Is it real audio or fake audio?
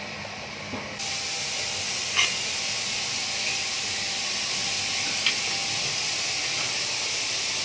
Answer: real